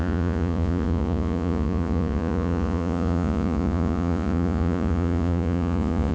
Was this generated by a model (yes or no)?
yes